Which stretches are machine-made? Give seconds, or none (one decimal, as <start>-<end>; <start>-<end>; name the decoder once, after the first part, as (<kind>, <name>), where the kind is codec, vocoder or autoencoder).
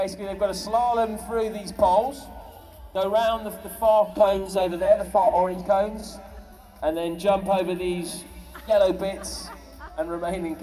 4.1-5.6 (codec, SNAC)